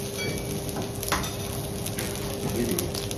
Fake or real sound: real